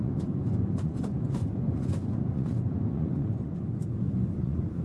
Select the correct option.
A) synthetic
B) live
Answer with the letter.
A